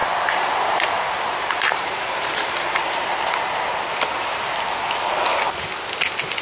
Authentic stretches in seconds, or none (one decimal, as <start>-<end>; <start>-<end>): 2.6-6.4